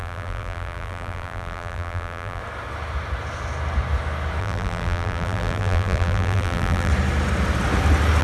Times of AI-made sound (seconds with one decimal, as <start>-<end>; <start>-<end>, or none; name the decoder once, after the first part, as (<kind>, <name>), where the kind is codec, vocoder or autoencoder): 0.0-2.4 (vocoder, BigVGAN v2); 4.4-6.9